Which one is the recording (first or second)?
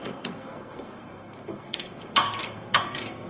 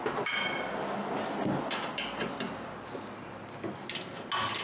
second